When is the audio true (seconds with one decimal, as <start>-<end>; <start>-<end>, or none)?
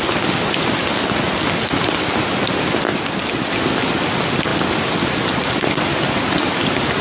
0.0-7.0